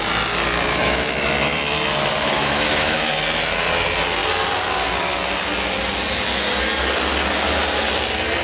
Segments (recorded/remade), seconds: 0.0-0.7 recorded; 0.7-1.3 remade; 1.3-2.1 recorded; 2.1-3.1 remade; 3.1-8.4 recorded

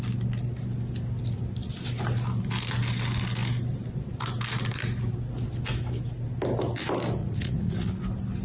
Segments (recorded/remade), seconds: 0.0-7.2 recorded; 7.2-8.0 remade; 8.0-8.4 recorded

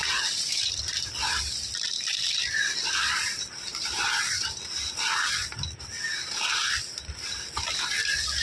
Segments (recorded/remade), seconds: 0.0-1.2 remade; 1.2-8.4 recorded

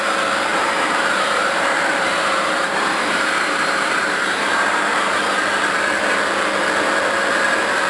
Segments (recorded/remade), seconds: 0.0-0.5 recorded; 0.5-5.2 remade; 5.2-7.9 recorded

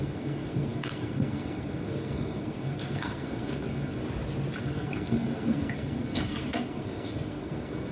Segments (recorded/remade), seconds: 0.0-4.0 remade; 4.0-4.6 recorded; 4.6-7.9 remade

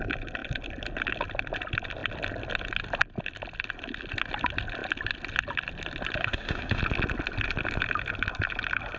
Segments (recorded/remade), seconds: 0.0-6.2 recorded; 6.2-6.8 remade; 6.8-9.0 recorded

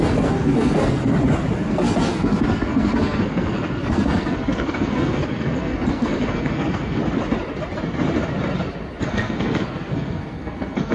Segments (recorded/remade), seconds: 0.0-1.0 remade; 1.0-1.7 recorded; 1.7-7.0 remade; 7.0-9.0 recorded; 9.0-10.9 remade

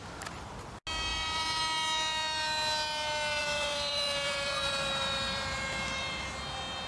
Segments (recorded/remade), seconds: 0.0-1.1 recorded; 1.1-1.6 remade; 1.6-3.4 recorded; 3.4-6.3 remade; 6.3-6.9 recorded